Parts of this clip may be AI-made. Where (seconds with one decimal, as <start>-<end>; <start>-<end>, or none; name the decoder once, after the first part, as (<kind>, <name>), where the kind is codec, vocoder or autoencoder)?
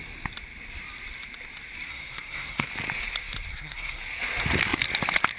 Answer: 1.9-2.7 (codec, SNAC); 3.5-4.0